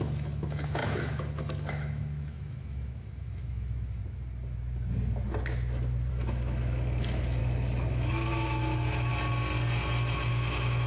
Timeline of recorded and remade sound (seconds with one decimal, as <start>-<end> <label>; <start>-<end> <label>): 0.0-4.0 remade; 4.0-6.1 recorded; 6.1-7.4 remade; 7.4-7.9 recorded; 7.9-9.1 remade; 9.1-10.3 recorded; 10.3-10.9 remade